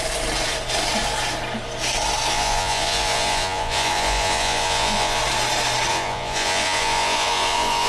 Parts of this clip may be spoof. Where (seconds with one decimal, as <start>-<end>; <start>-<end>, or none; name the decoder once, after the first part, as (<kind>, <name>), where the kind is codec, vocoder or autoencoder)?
2.3-5.2 (vocoder, Vocos); 5.9-7.9